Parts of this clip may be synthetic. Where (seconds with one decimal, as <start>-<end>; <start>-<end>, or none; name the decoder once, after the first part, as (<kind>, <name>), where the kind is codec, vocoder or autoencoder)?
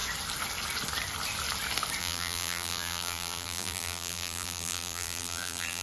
2.0-5.8 (vocoder, BigVGAN v2)